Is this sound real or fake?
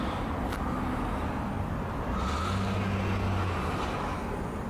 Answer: real